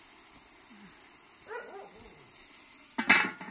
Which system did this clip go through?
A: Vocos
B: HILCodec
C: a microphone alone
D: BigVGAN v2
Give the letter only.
C